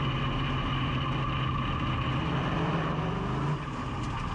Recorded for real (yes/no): yes